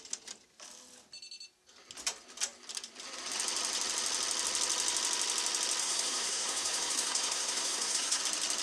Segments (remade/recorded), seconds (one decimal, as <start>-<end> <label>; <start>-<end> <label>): 0.0-5.8 recorded; 5.8-8.2 remade; 8.2-8.6 recorded